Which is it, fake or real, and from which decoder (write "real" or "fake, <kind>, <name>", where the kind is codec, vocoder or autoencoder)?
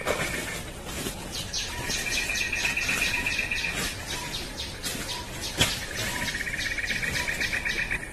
real